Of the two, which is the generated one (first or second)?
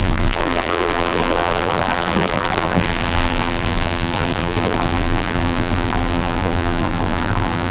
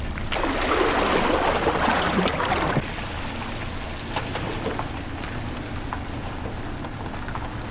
first